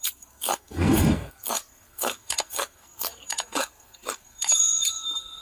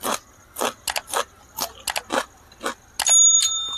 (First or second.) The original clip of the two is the second